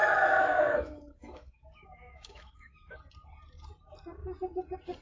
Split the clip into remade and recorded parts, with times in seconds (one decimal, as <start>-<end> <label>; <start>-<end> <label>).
0.0-3.0 remade; 3.0-5.0 recorded